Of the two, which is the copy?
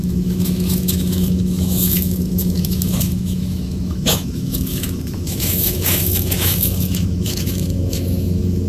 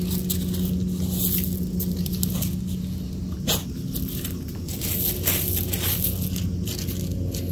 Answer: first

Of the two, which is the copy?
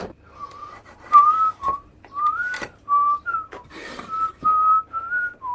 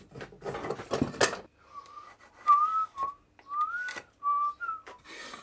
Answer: first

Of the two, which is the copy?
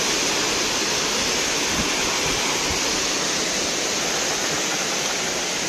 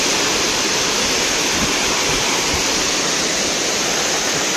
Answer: second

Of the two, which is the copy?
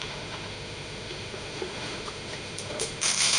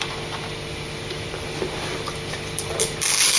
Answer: first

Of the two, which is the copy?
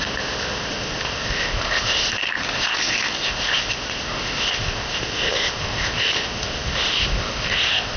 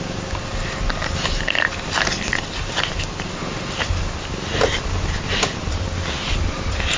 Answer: first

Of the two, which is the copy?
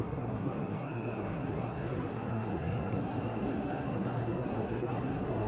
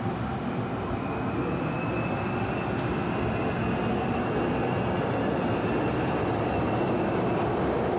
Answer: first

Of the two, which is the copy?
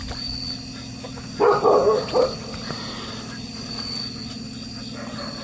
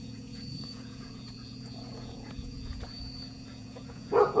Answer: second